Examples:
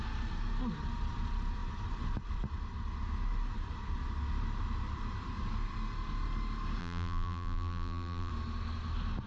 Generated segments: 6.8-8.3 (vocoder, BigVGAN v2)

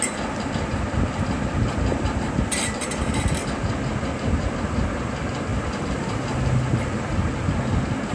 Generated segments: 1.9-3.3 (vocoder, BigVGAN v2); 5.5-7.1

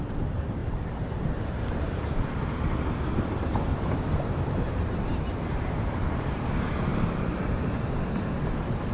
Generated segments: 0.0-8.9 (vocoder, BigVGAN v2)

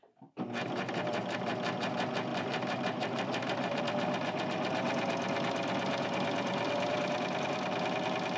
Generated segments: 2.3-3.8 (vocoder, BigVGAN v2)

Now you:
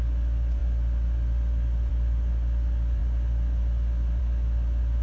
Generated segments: none

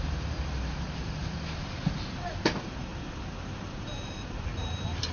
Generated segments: 0.0-1.2 (vocoder, BigVGAN v2); 2.0-2.9; 3.6-5.1